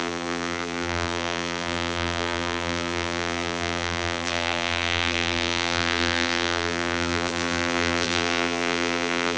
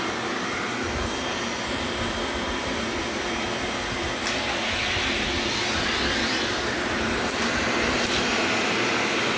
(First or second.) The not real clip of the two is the first